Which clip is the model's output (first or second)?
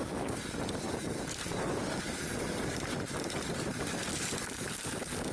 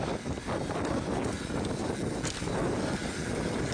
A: first